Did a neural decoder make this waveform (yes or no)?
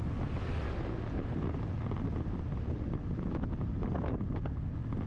no